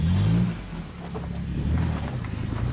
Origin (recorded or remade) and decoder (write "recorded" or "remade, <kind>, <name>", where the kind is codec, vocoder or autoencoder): recorded